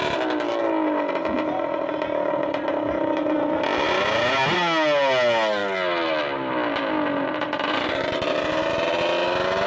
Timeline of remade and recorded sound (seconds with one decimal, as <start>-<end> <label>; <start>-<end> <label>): 0.0-9.7 recorded